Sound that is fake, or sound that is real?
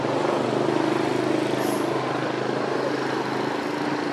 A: real